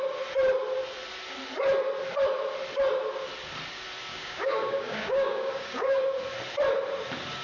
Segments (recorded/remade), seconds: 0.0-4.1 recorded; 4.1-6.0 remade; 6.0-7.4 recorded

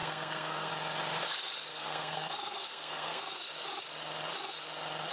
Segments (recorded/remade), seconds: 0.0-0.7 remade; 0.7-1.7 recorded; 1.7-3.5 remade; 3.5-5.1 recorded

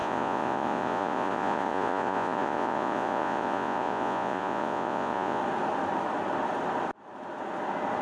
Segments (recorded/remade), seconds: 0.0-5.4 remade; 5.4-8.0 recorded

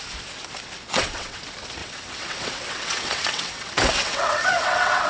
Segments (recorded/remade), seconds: 0.0-0.9 recorded; 0.9-1.4 remade; 1.4-1.8 recorded; 1.8-5.1 remade